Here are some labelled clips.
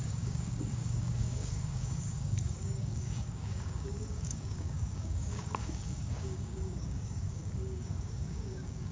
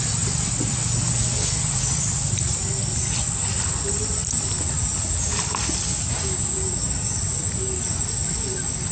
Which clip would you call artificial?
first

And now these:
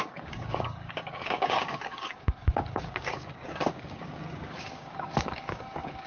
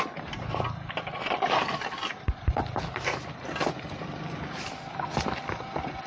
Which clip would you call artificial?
first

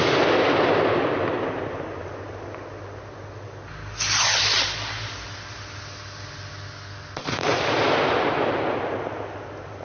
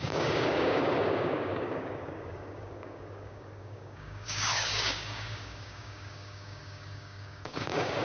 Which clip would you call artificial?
second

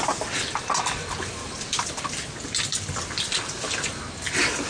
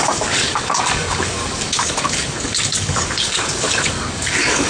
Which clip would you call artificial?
second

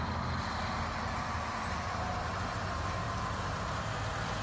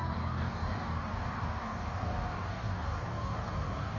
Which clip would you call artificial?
second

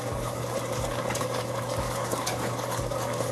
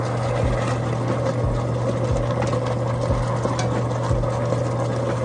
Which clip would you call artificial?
first